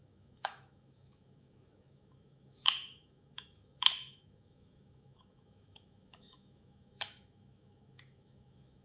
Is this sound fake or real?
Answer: fake